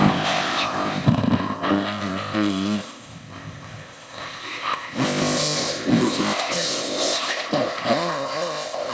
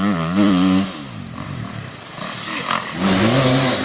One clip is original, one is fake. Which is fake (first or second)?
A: first